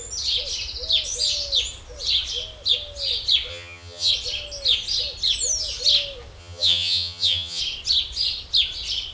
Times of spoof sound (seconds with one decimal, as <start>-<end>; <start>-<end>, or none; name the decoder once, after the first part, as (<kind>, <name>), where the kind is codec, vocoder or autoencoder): 3.5-4.1 (vocoder, HiFi-GAN); 6.4-7.6